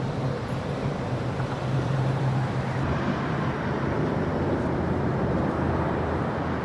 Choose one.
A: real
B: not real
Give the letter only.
B